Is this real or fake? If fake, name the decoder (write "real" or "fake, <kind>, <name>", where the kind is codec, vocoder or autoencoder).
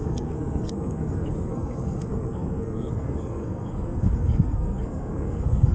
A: fake, codec, SNAC